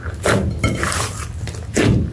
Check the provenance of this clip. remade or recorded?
recorded